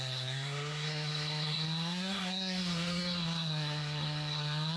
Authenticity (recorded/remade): remade